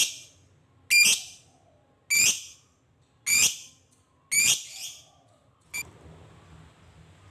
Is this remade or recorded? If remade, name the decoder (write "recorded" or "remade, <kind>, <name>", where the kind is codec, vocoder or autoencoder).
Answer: recorded